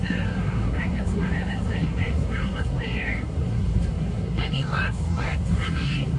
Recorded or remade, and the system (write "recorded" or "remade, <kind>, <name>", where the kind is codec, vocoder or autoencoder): remade, codec, SNAC